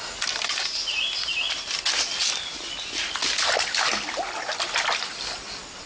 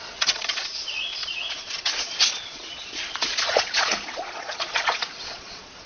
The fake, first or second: second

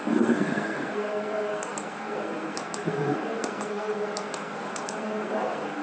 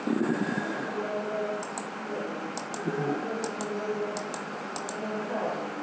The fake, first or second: first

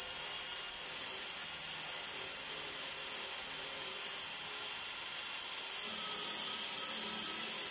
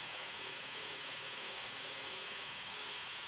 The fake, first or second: second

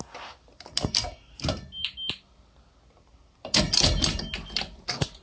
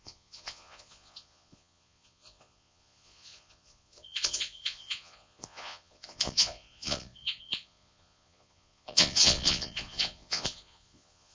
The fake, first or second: second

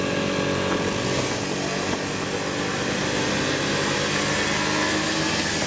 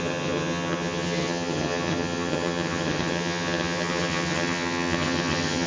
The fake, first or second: second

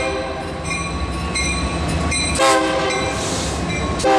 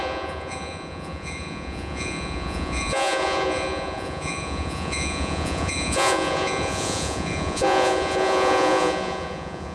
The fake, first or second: second